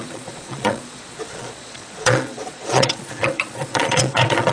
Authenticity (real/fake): fake